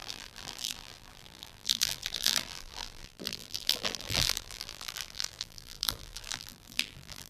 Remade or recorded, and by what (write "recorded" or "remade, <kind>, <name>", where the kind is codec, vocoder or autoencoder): remade, vocoder, BigVGAN v2